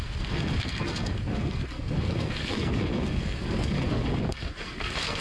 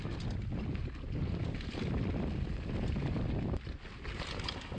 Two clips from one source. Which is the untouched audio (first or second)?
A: second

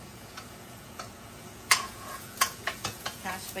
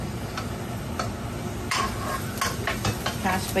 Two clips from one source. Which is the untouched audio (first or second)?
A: second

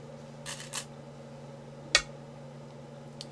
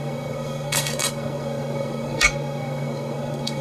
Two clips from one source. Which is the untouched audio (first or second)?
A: first